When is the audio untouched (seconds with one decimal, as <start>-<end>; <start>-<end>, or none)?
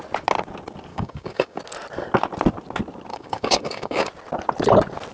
0.0-0.9; 1.6-3.1; 4.1-5.1